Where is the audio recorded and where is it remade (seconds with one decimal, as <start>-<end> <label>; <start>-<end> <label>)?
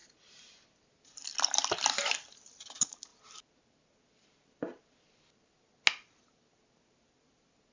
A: 0.0-7.7 recorded